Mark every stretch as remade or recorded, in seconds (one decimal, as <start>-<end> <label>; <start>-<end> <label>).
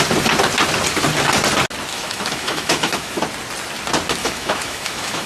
0.0-1.9 recorded; 1.9-3.2 remade; 3.2-4.2 recorded; 4.2-5.3 remade